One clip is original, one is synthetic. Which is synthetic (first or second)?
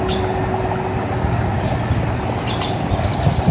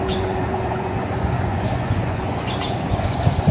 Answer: second